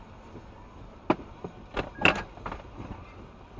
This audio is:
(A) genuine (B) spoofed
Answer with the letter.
A